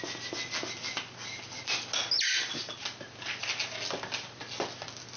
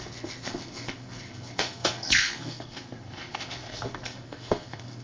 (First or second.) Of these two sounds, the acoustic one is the first